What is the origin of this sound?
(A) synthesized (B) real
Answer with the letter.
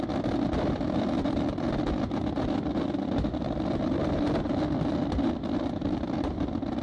A